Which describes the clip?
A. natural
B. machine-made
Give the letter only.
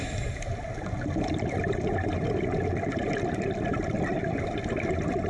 A